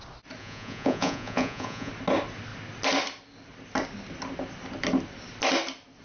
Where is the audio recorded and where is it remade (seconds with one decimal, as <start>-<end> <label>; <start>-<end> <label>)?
0.0-0.4 recorded; 0.4-1.9 remade; 1.9-6.0 recorded